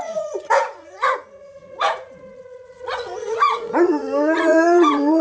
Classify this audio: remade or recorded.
remade